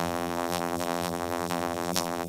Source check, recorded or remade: remade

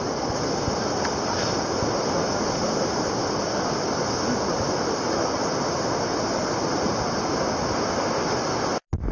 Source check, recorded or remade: recorded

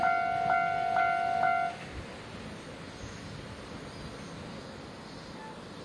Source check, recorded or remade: recorded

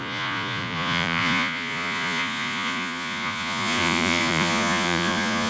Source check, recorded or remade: remade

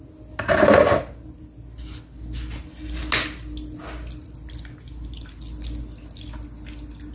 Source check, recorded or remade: recorded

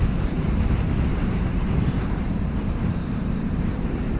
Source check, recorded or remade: remade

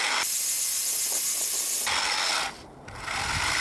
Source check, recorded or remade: recorded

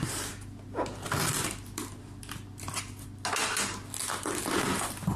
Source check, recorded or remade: recorded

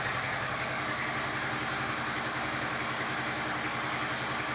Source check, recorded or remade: recorded